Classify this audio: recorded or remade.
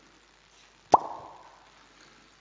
recorded